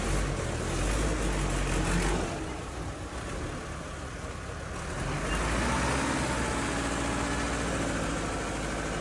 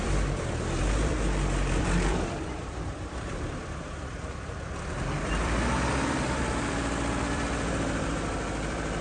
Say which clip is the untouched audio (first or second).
first